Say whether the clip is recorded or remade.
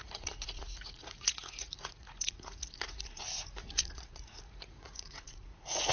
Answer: remade